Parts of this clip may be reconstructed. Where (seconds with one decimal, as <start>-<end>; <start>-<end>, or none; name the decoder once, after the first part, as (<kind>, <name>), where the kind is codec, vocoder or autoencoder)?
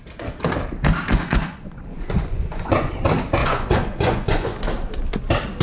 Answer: 1.1-2.9 (vocoder, Vocos); 3.4-4.6